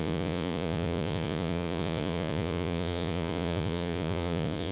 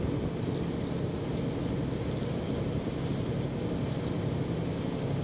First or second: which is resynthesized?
first